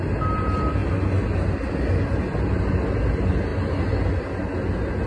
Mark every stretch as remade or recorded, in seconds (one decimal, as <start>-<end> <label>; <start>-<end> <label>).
0.0-5.1 recorded